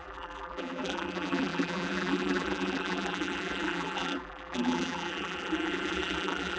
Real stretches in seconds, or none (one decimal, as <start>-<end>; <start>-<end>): none